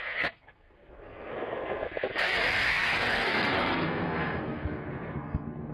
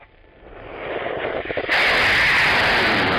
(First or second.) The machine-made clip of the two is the first